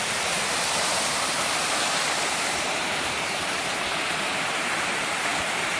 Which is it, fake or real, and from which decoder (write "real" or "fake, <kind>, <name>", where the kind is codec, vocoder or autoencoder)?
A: fake, vocoder, BigVGAN v2